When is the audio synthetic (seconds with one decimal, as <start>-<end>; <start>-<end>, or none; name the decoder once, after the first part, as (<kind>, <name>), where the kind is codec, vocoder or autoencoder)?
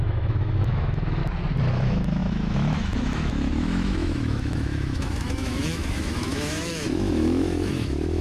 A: 0.0-1.2 (autoencoder, DAC-VAE); 1.7-8.2